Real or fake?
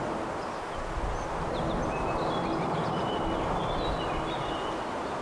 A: real